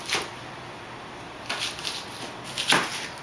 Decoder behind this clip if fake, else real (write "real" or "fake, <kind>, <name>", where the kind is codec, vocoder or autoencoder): real